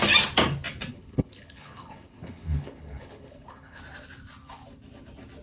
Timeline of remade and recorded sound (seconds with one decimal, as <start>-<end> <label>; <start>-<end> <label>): 0.0-0.9 recorded; 0.9-3.8 remade; 3.8-5.4 recorded